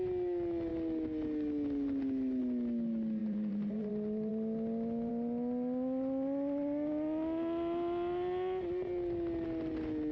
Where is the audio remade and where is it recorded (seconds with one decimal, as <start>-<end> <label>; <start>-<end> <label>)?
0.0-3.2 recorded; 3.2-3.9 remade; 3.9-10.1 recorded